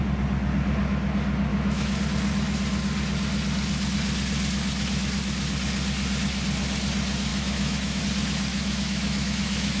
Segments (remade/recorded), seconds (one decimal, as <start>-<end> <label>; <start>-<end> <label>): 0.0-1.5 recorded; 1.5-2.0 remade; 2.0-7.3 recorded; 7.3-8.0 remade; 8.0-8.5 recorded; 8.5-9.8 remade

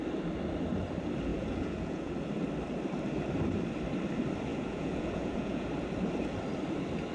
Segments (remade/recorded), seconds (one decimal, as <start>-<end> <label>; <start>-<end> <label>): 0.0-1.3 recorded; 1.3-2.1 remade; 2.1-4.5 recorded; 4.5-5.7 remade; 5.7-7.1 recorded

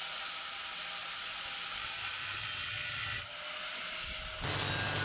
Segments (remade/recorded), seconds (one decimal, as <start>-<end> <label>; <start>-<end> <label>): 0.0-5.0 recorded

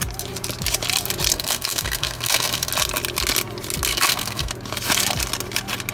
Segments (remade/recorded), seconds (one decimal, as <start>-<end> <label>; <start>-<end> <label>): 0.0-1.3 recorded; 1.3-2.7 remade; 2.7-3.9 recorded; 3.9-4.5 remade; 4.5-5.9 recorded

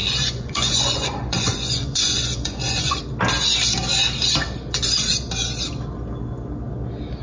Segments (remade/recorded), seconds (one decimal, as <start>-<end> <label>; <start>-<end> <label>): 0.0-3.0 remade; 3.0-7.2 recorded

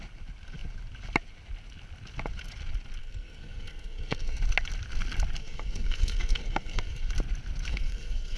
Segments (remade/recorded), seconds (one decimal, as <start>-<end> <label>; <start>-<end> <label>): 0.0-3.0 recorded; 3.0-4.4 remade; 4.4-5.4 recorded; 5.4-7.1 remade; 7.1-7.7 recorded; 7.7-8.4 remade

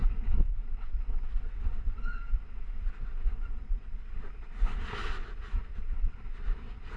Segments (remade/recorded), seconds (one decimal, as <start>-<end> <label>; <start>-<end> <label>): 0.0-4.2 remade; 4.2-5.7 recorded; 5.7-6.2 remade; 6.2-7.0 recorded